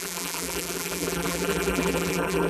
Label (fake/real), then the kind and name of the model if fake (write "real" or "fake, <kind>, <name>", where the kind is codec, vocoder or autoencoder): fake, vocoder, BigVGAN v2